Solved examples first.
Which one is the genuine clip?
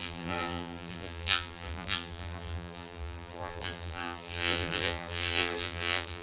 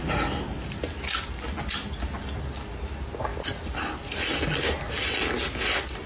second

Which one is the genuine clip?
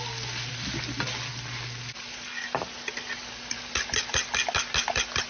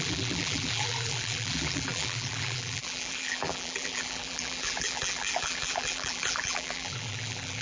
first